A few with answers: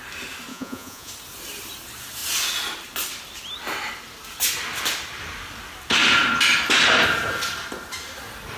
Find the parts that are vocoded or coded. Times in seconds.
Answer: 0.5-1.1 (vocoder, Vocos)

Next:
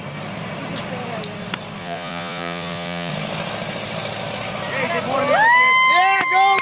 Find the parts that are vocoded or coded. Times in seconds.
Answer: 1.8-3.1 (vocoder, Vocos)

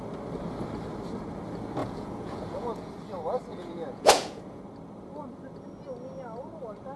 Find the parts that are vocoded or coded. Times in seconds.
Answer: 1.8-2.9 (vocoder, Vocos); 3.5-4.6